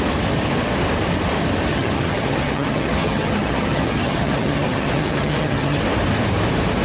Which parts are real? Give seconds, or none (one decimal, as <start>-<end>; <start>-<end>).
0.0-1.7; 5.8-6.8